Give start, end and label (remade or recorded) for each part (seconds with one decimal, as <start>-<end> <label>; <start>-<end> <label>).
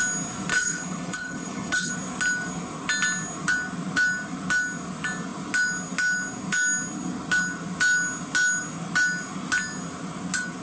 0.0-0.5 recorded; 0.5-1.9 remade; 1.9-10.6 recorded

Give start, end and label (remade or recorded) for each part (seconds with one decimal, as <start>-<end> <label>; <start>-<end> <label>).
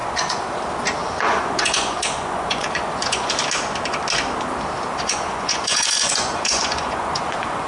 0.0-0.6 remade; 0.6-1.0 recorded; 1.0-3.3 remade; 3.3-4.9 recorded; 4.9-7.7 remade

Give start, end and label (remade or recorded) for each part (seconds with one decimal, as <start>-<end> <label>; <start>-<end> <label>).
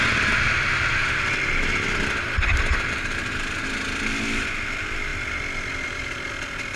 0.0-6.8 recorded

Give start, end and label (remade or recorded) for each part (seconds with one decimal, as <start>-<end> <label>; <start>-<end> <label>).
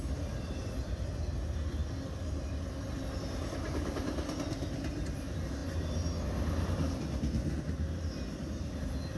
0.0-9.2 recorded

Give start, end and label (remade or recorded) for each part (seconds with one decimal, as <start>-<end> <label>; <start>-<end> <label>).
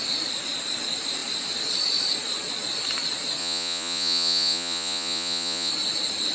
0.0-3.4 recorded; 3.4-5.7 remade; 5.7-6.3 recorded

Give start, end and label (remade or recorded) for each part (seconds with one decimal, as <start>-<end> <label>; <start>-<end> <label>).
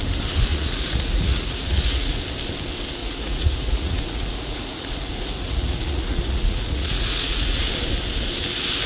0.0-0.5 recorded; 0.5-2.2 remade; 2.2-3.0 recorded; 3.0-7.6 remade; 7.6-8.9 recorded